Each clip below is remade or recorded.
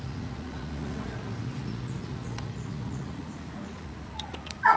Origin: remade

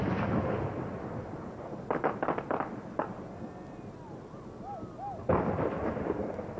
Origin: recorded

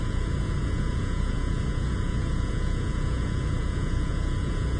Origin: remade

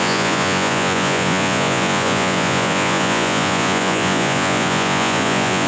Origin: remade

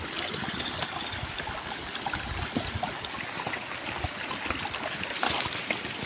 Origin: recorded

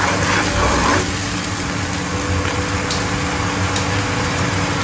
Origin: recorded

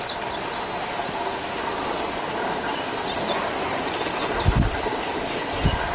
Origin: recorded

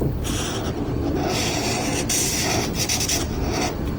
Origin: recorded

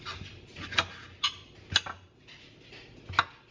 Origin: recorded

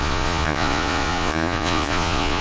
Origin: remade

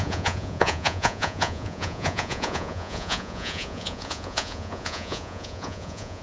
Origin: remade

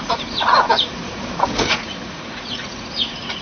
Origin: remade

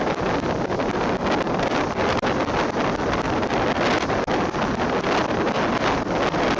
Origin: recorded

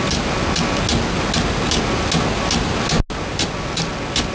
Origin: recorded